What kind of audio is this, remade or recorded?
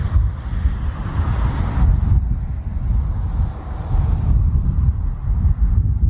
recorded